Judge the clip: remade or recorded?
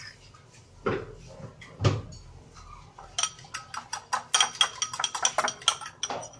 recorded